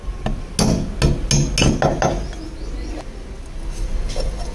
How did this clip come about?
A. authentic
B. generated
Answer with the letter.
A